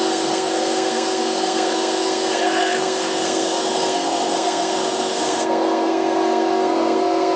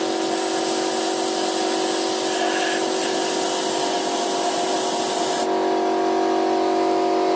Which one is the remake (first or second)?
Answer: first